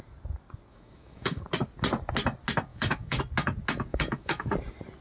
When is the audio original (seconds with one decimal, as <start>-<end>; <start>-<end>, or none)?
0.0-0.7; 1.4-2.7; 3.2-3.9; 4.5-5.0